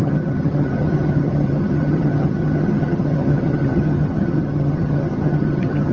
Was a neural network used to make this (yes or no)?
yes